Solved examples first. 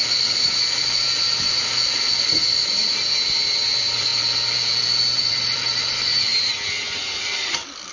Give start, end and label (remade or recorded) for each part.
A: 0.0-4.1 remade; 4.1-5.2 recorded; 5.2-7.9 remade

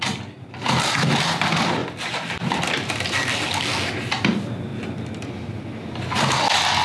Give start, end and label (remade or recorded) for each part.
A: 0.0-1.8 recorded; 1.8-3.6 remade; 3.6-4.7 recorded; 4.7-5.6 remade; 5.6-6.8 recorded

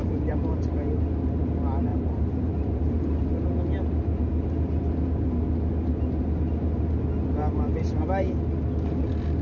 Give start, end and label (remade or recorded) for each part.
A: 0.0-0.7 remade; 0.7-1.9 recorded; 1.9-3.2 remade; 3.2-7.4 recorded; 7.4-8.0 remade; 8.0-9.4 recorded

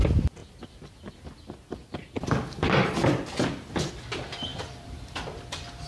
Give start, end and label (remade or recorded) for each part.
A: 0.0-4.5 recorded; 4.5-5.4 remade; 5.4-5.9 recorded

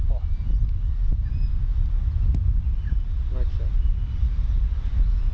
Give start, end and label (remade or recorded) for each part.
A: 0.0-5.3 recorded

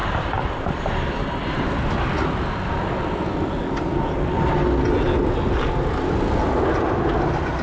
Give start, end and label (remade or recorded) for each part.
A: 0.0-0.8 remade; 0.8-7.6 recorded